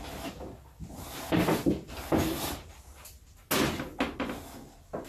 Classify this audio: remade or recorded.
recorded